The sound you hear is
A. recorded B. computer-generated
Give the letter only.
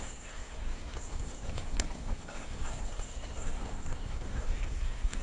B